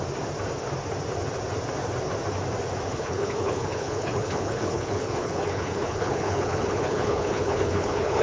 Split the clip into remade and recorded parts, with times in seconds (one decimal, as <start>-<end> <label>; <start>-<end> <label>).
0.0-2.9 recorded; 2.9-8.2 remade